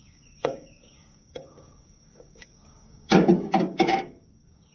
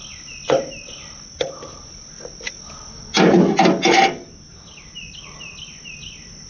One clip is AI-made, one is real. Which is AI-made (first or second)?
first